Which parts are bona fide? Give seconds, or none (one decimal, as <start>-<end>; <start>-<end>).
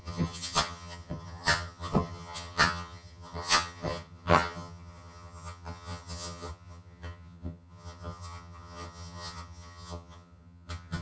none